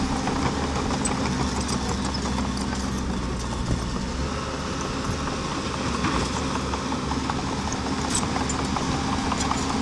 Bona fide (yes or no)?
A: yes